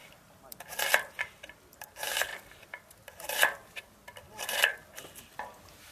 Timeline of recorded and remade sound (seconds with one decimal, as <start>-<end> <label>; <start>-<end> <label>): 0.0-5.9 recorded